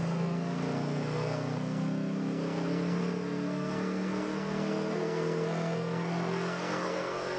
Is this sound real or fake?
fake